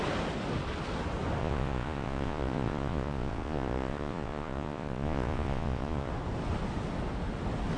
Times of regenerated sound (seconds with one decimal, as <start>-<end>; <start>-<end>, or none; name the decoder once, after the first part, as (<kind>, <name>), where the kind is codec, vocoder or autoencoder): 1.4-6.1 (vocoder, Vocos)